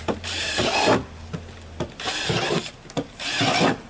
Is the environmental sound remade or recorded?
recorded